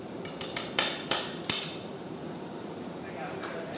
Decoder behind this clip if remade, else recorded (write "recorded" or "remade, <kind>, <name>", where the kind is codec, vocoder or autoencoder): remade, vocoder, BigVGAN v2